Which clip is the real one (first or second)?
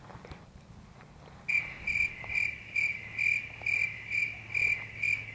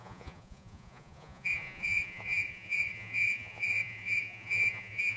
first